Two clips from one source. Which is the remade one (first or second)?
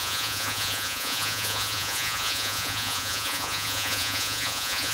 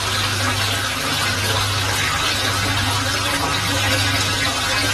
first